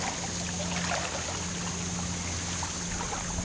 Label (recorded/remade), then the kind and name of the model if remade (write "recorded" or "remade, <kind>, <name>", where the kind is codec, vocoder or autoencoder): recorded